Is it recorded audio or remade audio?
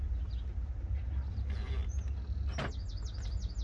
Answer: recorded